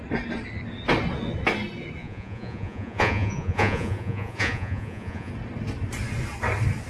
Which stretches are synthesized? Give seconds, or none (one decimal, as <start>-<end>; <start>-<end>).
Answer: 2.0-5.3